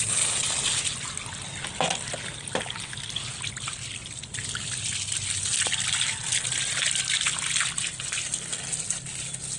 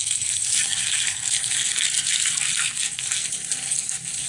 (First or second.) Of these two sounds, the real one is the first